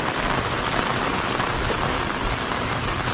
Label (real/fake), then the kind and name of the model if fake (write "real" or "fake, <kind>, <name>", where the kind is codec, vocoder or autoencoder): real